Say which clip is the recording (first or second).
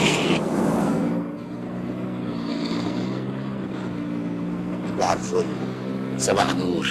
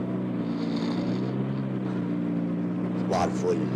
second